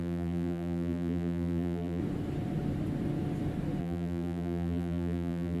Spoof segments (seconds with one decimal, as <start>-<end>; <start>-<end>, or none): 0.0-2.0; 3.8-5.6